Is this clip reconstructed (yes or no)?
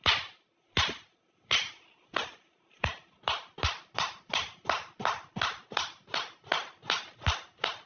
yes